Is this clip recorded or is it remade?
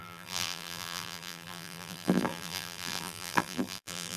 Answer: remade